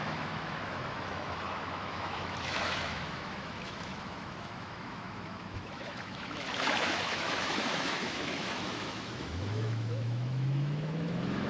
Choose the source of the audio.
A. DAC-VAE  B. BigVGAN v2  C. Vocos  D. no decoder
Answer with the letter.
A